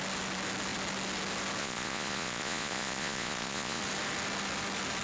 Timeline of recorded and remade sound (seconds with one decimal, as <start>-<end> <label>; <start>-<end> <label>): 0.0-1.6 recorded; 1.6-3.8 remade; 3.8-5.0 recorded